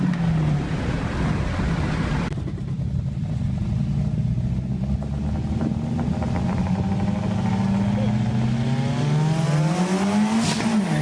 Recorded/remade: recorded